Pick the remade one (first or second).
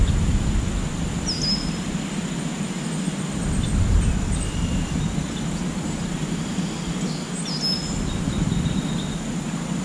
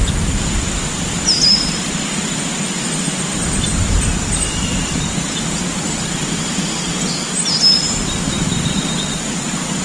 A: second